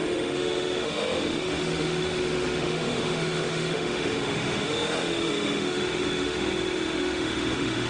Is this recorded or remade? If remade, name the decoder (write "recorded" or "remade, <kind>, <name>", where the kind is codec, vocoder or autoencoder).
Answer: remade, autoencoder, DAC-VAE